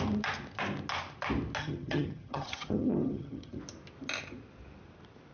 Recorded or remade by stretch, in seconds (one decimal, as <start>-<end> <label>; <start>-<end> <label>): 0.0-1.6 recorded; 1.6-3.6 remade; 3.6-5.3 recorded